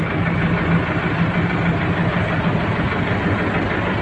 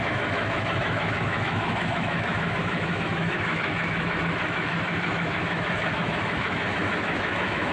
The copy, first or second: second